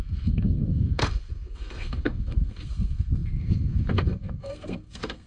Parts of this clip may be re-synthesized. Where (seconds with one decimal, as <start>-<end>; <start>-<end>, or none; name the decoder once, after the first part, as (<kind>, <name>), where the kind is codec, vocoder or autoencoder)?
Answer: 0.0-5.3 (codec, SNAC)